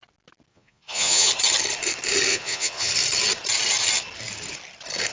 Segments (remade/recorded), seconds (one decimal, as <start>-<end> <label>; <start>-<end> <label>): 0.0-0.5 recorded; 0.5-1.3 remade; 1.3-2.3 recorded; 2.3-2.9 remade; 2.9-5.1 recorded